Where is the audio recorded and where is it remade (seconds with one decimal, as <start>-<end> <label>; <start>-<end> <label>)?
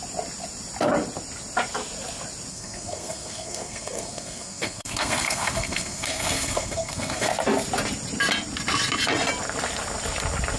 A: 0.0-2.5 recorded; 2.5-7.3 remade; 7.3-10.6 recorded